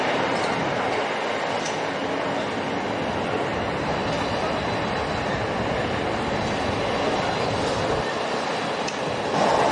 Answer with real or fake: real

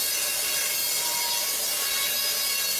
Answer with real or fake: real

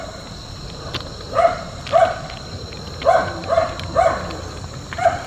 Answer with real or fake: real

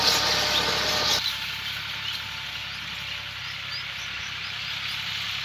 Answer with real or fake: real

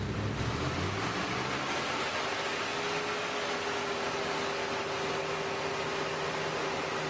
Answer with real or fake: real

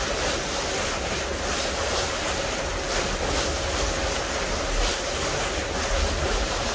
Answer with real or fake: real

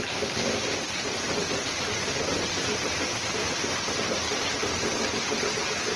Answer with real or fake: real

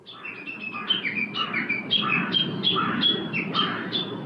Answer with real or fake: real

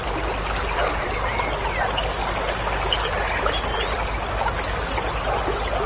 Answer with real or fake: real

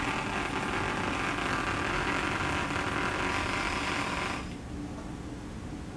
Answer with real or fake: real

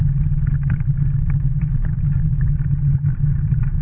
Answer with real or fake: real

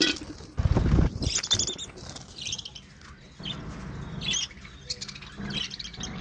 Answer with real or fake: real